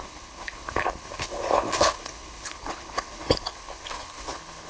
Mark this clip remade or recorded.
remade